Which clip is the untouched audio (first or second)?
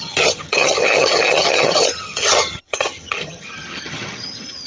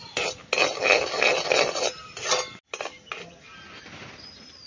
second